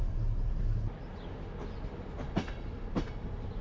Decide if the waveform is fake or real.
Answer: real